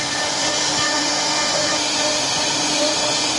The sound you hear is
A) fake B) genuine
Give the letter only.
A